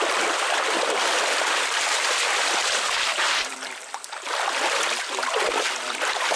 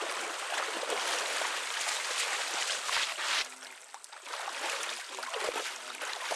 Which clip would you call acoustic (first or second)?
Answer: second